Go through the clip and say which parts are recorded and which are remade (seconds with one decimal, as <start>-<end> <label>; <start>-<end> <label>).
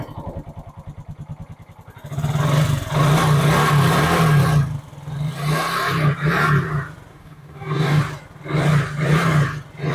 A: 0.0-7.1 recorded; 7.1-8.0 remade; 8.0-9.9 recorded